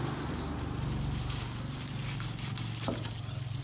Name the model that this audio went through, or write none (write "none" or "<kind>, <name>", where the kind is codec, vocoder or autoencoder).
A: none